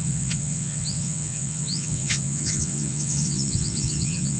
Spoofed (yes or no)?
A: yes